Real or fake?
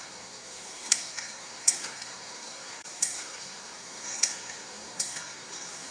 fake